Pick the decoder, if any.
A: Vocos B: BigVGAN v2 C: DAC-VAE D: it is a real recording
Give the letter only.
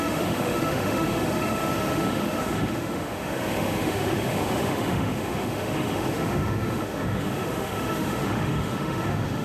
C